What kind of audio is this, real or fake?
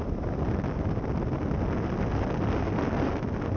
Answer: real